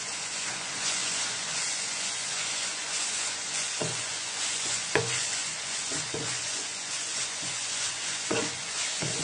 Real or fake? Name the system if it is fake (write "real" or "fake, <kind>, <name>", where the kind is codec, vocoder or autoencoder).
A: fake, vocoder, Vocos